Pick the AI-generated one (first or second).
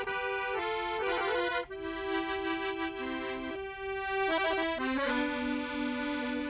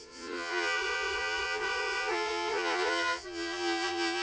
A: second